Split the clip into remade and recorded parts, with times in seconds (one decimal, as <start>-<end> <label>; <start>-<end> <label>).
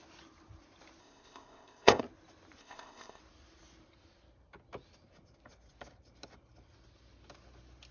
0.0-1.0 recorded; 1.0-2.0 remade; 2.0-2.6 recorded; 2.6-3.2 remade; 3.2-7.9 recorded